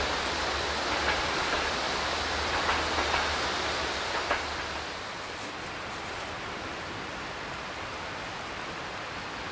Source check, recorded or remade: recorded